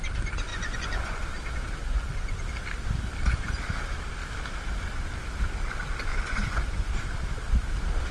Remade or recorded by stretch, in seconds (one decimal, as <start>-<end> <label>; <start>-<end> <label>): 0.0-0.5 recorded; 0.5-1.2 remade; 1.2-1.8 recorded; 1.8-2.4 remade; 2.4-6.1 recorded; 6.1-6.9 remade; 6.9-8.1 recorded